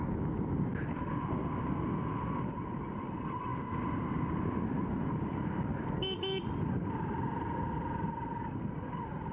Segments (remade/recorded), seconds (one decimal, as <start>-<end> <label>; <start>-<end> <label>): 0.0-9.3 recorded